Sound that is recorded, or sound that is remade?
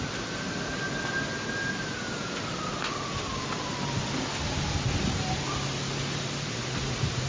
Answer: recorded